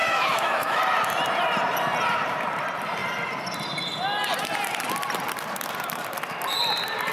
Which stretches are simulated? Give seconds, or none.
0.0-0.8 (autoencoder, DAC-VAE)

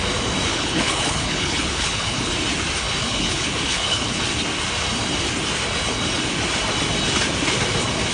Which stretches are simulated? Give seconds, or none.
0.5-2.3 (codec, HILCodec); 3.0-4.2

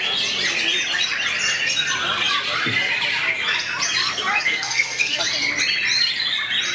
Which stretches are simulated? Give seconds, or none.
4.0-5.2 (codec, SNAC)

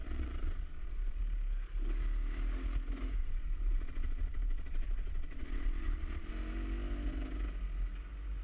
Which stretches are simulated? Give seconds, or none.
0.0-1.2 (vocoder, Vocos); 3.2-6.3

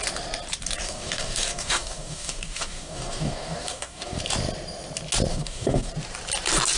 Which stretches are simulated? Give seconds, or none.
0.8-4.2 (codec, DAC); 5.3-5.9

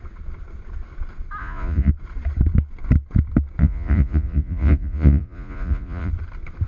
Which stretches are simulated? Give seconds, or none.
1.4-1.9 (vocoder, Vocos); 3.6-6.1

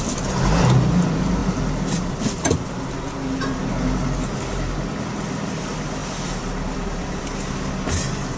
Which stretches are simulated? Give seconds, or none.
1.4-2.1 (vocoder, BigVGAN v2); 6.0-7.2